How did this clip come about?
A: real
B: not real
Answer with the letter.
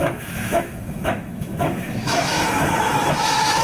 B